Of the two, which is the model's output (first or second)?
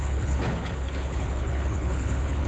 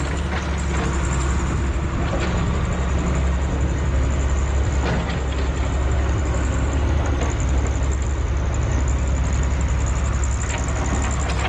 first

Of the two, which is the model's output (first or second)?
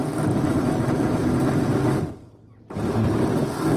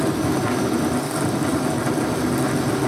first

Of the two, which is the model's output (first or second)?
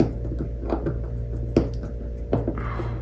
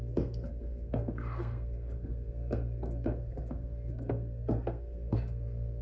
second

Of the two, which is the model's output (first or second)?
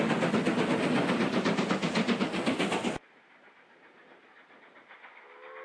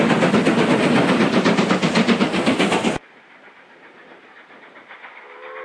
second